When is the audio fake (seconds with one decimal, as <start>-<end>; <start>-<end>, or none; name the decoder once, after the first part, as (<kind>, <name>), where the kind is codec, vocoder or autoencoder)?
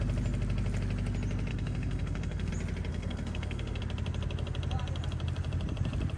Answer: 1.5-2.5 (codec, SNAC); 2.9-3.8